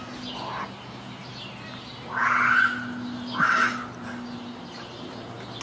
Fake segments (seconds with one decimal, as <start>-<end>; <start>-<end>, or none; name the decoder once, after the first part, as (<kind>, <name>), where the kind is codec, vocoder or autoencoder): none